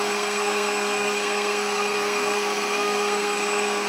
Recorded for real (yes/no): no